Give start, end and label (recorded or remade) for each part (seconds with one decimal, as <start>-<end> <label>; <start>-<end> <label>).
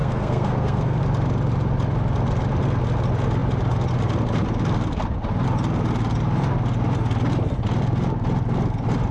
0.0-1.0 remade; 1.0-9.1 recorded